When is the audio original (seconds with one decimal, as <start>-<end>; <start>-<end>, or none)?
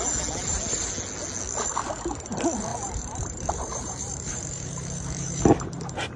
0.0-2.7; 5.4-6.2